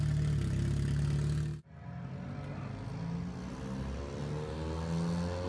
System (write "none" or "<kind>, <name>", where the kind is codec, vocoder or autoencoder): none